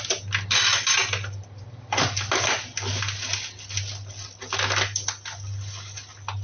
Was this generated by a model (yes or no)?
no